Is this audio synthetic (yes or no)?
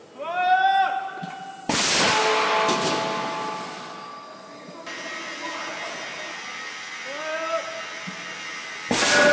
no